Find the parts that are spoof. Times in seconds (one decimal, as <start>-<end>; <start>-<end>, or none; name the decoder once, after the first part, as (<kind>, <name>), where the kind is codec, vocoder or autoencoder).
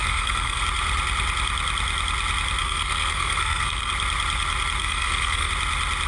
0.0-0.6 (codec, SNAC); 2.6-3.9; 4.8-5.5